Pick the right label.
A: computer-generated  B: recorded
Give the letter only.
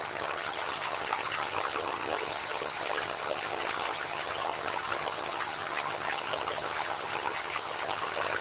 A